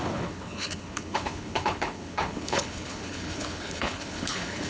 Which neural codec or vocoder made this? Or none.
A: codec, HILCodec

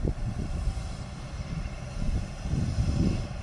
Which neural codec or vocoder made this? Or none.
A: vocoder, BigVGAN v2